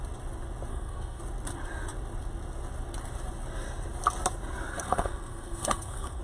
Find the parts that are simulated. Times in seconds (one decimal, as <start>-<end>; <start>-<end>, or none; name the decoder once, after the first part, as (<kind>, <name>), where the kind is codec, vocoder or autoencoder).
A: 0.7-1.2 (codec, SNAC); 4.7-6.2